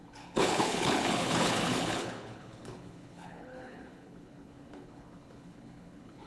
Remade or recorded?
remade